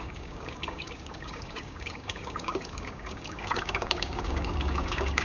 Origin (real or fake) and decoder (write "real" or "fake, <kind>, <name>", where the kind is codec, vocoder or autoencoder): fake, codec, DAC